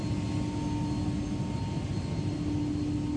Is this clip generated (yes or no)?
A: no